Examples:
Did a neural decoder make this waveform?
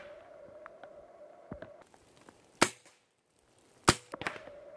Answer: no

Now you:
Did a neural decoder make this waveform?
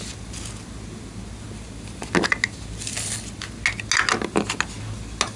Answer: no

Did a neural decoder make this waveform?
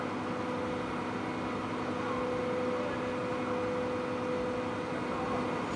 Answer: no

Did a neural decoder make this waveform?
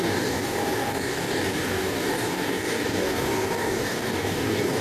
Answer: yes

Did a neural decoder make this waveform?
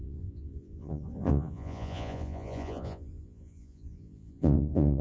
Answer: yes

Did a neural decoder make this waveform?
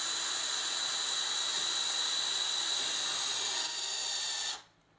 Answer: no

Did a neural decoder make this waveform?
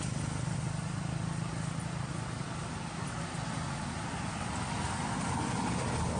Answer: no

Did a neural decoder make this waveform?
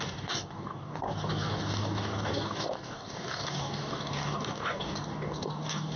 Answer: yes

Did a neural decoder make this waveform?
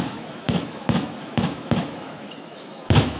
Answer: yes